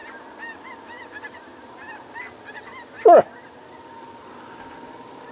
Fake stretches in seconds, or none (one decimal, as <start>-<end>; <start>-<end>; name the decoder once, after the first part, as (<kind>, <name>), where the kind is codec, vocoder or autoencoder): none